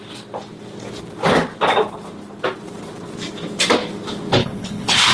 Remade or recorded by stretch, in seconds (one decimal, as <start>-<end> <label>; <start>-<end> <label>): 0.0-4.4 recorded; 4.4-5.1 remade